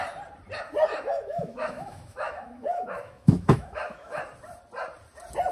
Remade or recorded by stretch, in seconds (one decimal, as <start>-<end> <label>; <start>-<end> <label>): 0.0-0.9 recorded; 0.9-4.2 remade; 4.2-5.5 recorded

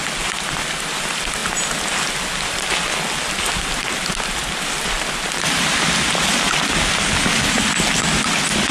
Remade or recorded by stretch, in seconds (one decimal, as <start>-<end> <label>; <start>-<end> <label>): 0.0-8.7 recorded

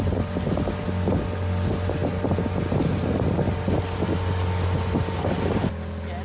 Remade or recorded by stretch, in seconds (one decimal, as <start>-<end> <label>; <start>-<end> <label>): 0.0-6.2 recorded

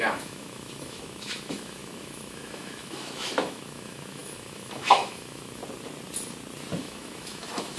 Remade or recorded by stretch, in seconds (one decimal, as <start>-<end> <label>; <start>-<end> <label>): 0.0-5.6 remade; 5.6-6.8 recorded; 6.8-7.8 remade

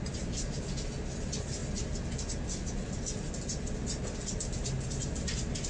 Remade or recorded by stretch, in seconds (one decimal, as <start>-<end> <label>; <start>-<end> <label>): 0.0-5.7 recorded